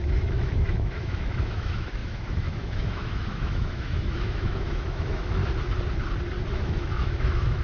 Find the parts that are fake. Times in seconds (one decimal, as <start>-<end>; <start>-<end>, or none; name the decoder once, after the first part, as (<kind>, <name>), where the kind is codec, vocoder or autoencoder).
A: 0.0-5.4 (autoencoder, DAC-VAE); 6.5-7.6